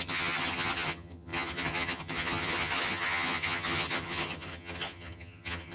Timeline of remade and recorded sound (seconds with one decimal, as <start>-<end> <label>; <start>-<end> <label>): 0.0-5.7 remade